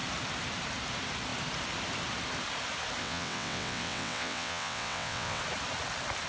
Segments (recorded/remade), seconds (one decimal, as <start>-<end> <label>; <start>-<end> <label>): 0.0-3.0 recorded; 3.0-5.4 remade; 5.4-6.3 recorded